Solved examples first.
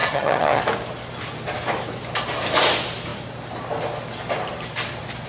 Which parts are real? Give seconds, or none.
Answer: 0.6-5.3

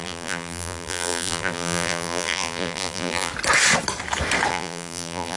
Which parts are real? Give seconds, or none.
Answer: 3.3-4.5

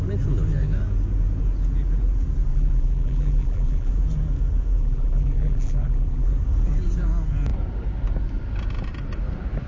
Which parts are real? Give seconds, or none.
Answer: 0.0-2.5; 3.9-4.8; 6.3-9.7

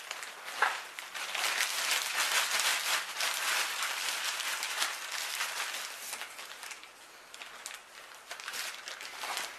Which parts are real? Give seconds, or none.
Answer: 0.0-7.8; 9.2-9.6

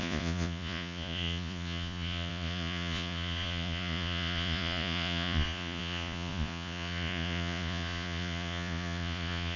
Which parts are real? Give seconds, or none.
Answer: none

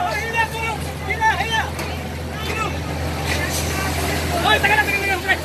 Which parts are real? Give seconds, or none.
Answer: 0.0-5.4

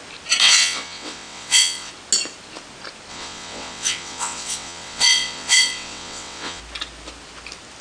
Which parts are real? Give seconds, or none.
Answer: 0.0-0.4; 1.9-3.1; 6.6-7.8

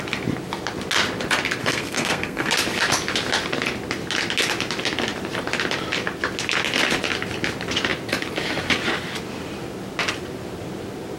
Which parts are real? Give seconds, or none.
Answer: 0.0-1.6; 2.5-11.2